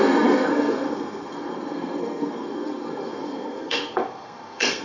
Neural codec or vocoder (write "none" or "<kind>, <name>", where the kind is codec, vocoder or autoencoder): codec, SNAC